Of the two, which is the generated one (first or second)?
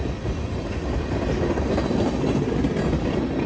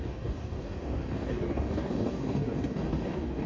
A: second